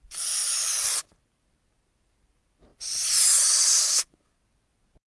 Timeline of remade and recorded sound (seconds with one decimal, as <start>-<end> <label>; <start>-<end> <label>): 0.0-3.8 recorded; 3.8-4.4 remade; 4.4-5.1 recorded